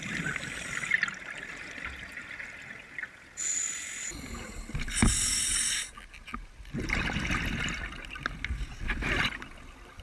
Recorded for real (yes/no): yes